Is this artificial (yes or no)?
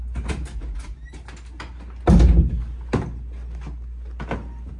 no